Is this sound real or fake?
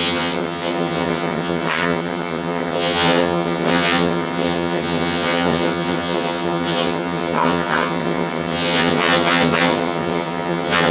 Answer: fake